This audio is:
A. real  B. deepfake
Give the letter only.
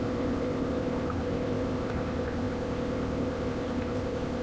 B